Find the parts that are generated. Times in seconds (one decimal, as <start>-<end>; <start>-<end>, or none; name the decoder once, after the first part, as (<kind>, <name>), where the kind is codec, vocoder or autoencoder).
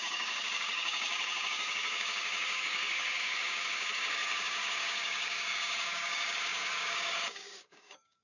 0.0-8.2 (codec, DAC)